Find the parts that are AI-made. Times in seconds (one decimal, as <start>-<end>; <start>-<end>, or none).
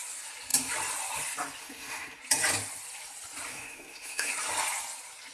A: 1.6-2.2; 3.5-4.3